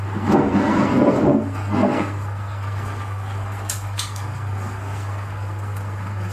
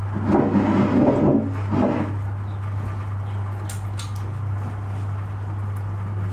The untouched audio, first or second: second